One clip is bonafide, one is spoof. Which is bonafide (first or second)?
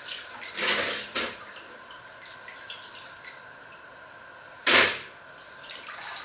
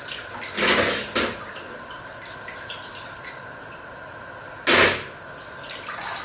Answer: second